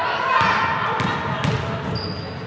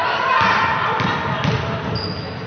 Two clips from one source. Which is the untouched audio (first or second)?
first